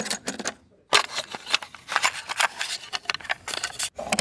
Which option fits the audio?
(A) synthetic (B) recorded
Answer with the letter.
B